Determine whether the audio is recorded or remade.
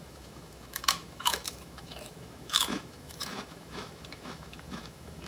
remade